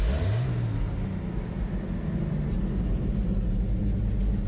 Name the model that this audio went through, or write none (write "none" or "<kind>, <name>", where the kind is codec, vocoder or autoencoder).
none